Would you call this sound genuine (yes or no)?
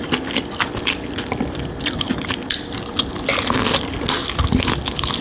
yes